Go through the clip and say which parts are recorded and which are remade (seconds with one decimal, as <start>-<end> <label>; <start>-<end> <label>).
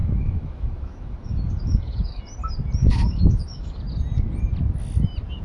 0.0-2.2 remade; 2.2-2.8 recorded; 2.8-3.8 remade; 3.8-5.4 recorded